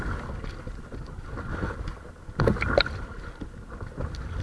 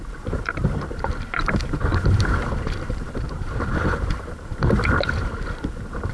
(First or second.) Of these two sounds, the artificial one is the second